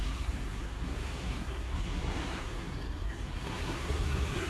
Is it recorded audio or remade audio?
remade